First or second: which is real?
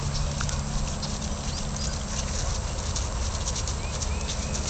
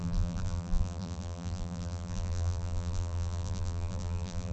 first